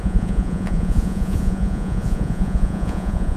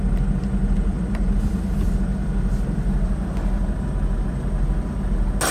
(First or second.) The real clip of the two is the second